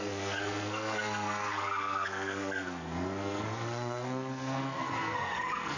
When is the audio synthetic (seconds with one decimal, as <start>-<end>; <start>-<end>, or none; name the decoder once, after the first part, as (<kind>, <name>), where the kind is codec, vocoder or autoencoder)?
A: 0.0-5.8 (codec, SNAC)